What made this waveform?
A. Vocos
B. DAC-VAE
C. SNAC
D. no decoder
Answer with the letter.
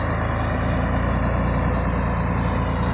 D